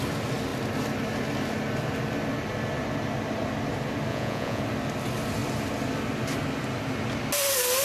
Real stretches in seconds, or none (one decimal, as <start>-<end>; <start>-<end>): 0.0-4.1; 4.6-7.8